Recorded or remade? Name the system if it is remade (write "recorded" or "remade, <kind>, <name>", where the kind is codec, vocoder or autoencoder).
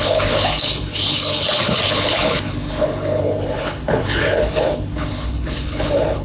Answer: remade, codec, HILCodec